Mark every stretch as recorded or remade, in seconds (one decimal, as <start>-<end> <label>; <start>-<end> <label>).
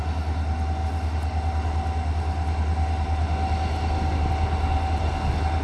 0.0-5.6 recorded